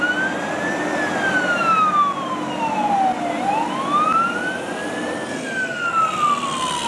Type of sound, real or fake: real